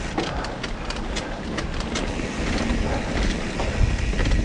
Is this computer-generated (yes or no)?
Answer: no